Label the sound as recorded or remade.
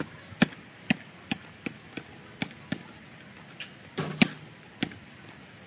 recorded